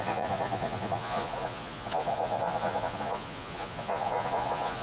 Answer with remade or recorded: remade